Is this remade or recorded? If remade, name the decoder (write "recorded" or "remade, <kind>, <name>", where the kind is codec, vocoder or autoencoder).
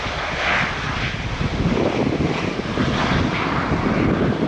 recorded